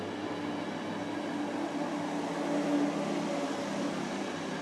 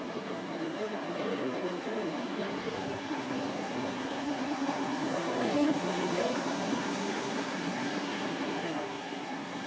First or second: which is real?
first